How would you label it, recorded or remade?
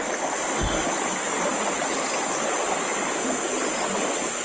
recorded